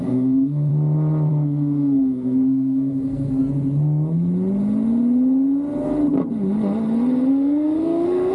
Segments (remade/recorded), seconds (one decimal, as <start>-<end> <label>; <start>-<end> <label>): 0.0-0.7 remade; 0.7-1.3 recorded; 1.3-3.4 remade; 3.4-7.3 recorded; 7.3-8.3 remade